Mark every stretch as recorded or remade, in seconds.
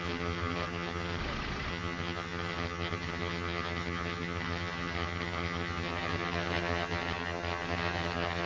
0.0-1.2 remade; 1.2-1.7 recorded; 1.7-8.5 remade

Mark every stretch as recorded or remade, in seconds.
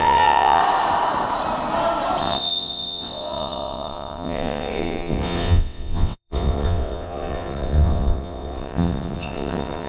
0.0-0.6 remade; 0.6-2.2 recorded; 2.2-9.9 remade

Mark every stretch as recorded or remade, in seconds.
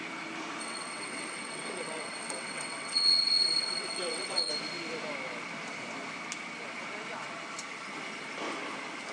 0.0-0.6 recorded; 0.6-4.5 remade; 4.5-9.1 recorded